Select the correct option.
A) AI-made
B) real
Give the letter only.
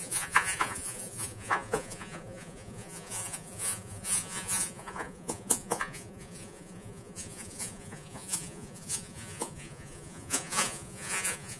A